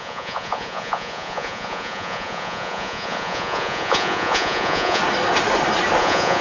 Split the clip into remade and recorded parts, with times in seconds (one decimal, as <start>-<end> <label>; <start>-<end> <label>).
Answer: 0.0-5.0 remade; 5.0-6.0 recorded; 6.0-6.4 remade